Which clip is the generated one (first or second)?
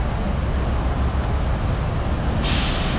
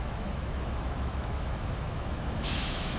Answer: second